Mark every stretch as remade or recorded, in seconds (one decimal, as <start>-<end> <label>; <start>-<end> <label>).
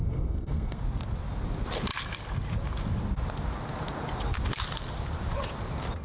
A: 0.0-0.8 remade; 0.8-6.0 recorded